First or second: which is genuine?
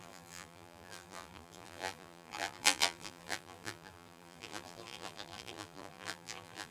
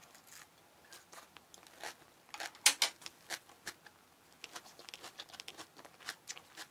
second